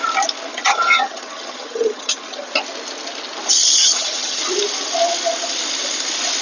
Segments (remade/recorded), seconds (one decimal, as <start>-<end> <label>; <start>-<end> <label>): 0.0-0.5 recorded; 0.5-2.5 remade; 2.5-3.8 recorded; 3.8-4.4 remade; 4.4-6.4 recorded